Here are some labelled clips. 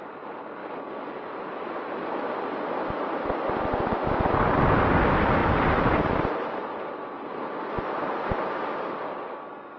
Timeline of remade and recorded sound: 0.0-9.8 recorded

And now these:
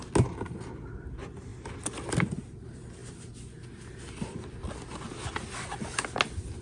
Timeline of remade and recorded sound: 0.0-6.6 recorded

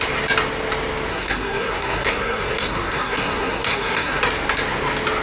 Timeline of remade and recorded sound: 0.0-1.1 recorded; 1.1-4.2 remade; 4.2-5.2 recorded